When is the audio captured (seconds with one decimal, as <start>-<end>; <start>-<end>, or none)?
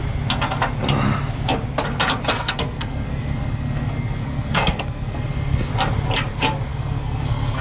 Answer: 0.0-2.3; 5.7-6.7